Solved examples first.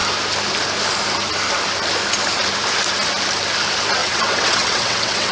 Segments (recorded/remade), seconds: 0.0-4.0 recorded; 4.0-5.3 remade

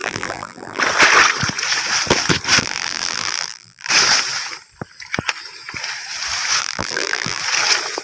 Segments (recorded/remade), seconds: 0.0-0.8 remade; 0.8-2.6 recorded; 2.6-3.9 remade; 3.9-6.6 recorded; 6.6-7.4 remade; 7.4-8.0 recorded

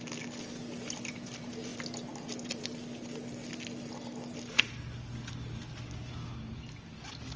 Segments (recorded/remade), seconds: 0.0-7.4 recorded

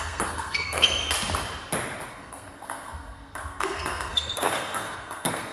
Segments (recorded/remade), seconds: 0.0-1.0 remade; 1.0-2.1 recorded; 2.1-5.5 remade

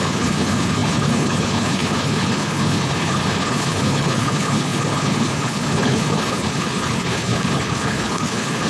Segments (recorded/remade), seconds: 0.0-8.7 remade

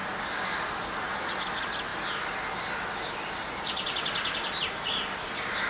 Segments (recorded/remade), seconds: 0.0-5.7 recorded

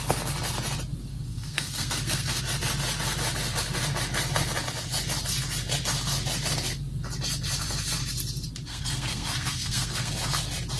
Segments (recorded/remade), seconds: 0.0-1.1 recorded; 1.1-2.4 remade; 2.4-8.7 recorded; 8.7-10.1 remade; 10.1-10.8 recorded

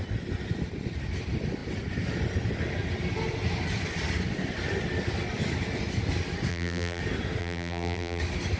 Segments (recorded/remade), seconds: 0.0-6.5 recorded; 6.5-7.0 remade; 7.0-7.4 recorded; 7.4-8.2 remade; 8.2-8.6 recorded